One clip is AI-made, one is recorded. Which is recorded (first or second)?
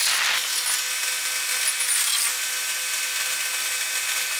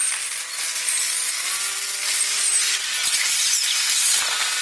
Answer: first